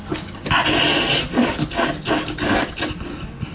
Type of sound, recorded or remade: recorded